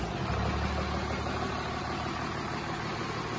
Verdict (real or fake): real